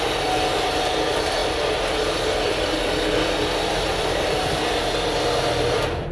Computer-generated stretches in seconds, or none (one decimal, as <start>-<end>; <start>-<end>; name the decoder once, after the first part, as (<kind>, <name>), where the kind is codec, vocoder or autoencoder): 1.4-4.5 (vocoder, BigVGAN v2)